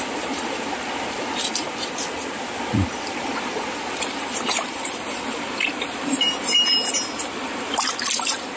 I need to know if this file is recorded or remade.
recorded